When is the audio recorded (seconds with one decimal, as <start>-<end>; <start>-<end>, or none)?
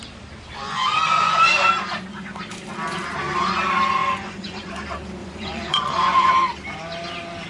0.0-0.6; 1.7-4.0; 4.7-5.2; 6.3-7.5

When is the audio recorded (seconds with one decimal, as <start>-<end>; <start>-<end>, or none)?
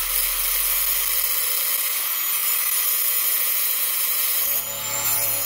0.0-1.8; 2.4-2.9